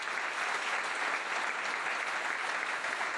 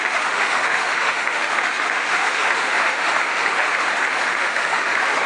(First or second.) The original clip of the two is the first